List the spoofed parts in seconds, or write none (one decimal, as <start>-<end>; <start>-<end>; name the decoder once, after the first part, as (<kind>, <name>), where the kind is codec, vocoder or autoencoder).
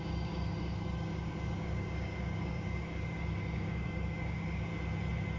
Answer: 0.0-4.7 (codec, DAC)